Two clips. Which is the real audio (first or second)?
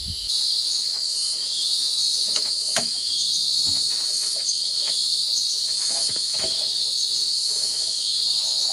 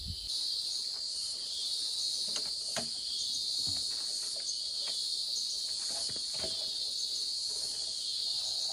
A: second